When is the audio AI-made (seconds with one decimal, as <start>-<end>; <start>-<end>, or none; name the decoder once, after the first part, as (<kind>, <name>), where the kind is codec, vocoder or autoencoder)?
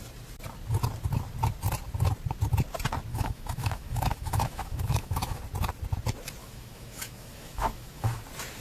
3.1-5.4 (autoencoder, DAC-VAE); 6.4-8.2